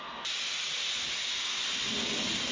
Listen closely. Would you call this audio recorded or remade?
recorded